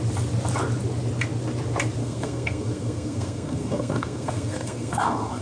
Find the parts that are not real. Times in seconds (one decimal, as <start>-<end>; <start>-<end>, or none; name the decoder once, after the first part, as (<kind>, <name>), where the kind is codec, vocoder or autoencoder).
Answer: 2.0-5.4 (codec, SNAC)